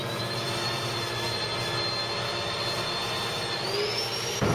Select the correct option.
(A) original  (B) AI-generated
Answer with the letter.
A